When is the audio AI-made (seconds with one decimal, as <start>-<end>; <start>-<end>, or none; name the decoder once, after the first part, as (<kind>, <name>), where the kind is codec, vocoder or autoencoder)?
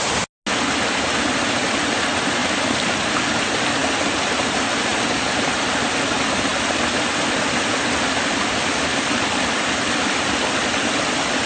none